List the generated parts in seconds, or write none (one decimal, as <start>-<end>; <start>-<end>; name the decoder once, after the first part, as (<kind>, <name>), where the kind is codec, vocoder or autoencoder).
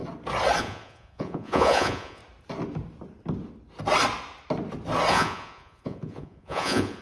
0.6-2.2 (vocoder, Vocos); 5.1-7.0